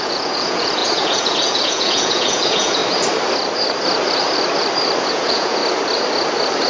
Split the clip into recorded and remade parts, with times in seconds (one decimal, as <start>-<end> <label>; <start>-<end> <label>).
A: 0.0-2.8 remade; 2.8-5.1 recorded; 5.1-5.6 remade; 5.6-6.7 recorded